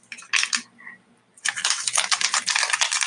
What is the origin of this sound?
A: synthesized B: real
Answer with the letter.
B